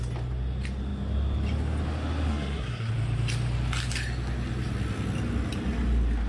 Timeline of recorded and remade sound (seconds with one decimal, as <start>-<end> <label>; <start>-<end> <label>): 0.0-2.3 recorded; 2.3-2.9 remade; 2.9-6.3 recorded